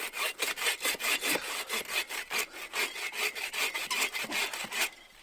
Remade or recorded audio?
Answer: recorded